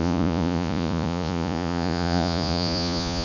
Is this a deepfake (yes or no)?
yes